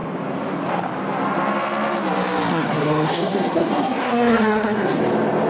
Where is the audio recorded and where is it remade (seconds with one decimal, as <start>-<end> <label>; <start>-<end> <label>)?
0.0-2.5 recorded; 2.5-5.0 remade; 5.0-5.5 recorded